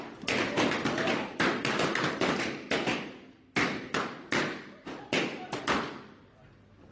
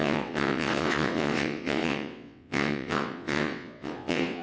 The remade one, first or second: second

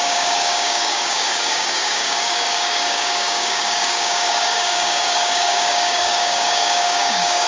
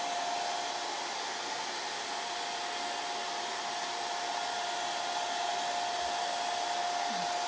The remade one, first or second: first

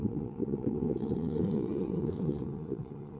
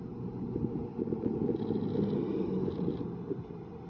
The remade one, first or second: first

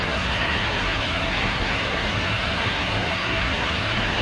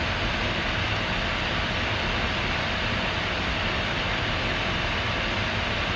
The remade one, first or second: first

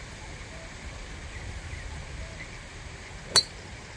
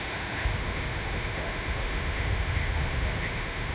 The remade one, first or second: second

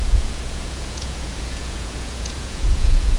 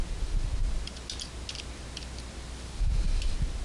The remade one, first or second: first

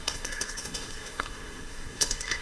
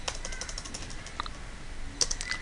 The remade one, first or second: first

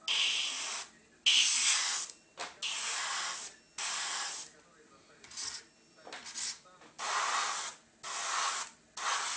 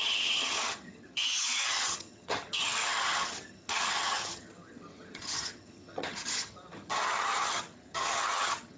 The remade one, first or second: second